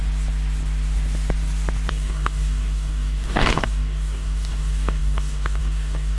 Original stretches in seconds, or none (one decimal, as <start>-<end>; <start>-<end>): 0.0-1.9